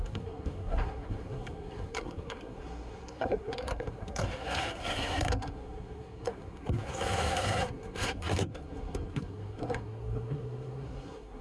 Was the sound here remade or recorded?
remade